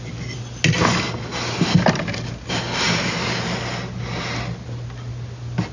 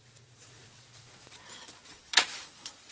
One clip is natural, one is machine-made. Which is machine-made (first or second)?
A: second